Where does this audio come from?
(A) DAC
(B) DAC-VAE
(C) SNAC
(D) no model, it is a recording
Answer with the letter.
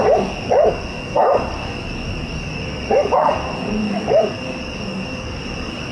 A